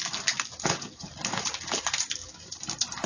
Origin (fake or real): real